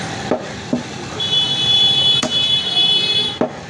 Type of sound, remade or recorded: recorded